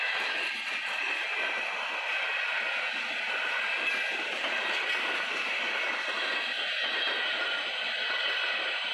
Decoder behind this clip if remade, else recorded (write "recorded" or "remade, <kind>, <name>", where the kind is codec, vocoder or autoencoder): recorded